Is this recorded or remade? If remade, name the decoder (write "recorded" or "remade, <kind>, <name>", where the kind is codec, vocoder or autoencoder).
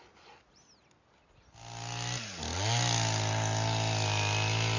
recorded